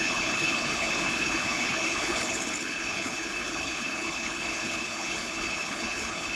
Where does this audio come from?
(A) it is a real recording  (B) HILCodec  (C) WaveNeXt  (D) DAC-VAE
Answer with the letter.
B